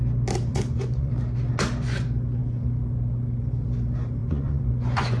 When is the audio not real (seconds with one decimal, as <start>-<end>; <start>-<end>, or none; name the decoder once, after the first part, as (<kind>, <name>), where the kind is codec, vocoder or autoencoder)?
0.5-1.1 (vocoder, Vocos); 4.2-5.2